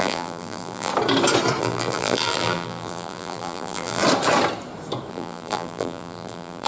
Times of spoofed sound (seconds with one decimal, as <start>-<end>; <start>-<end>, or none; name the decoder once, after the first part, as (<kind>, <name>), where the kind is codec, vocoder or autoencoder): 0.0-0.9 (vocoder, BigVGAN v2); 1.6-4.0; 5.1-6.7